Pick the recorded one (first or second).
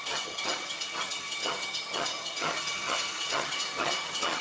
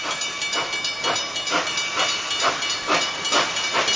second